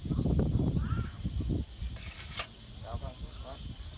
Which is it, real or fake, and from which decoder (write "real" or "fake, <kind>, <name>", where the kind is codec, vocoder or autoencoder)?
real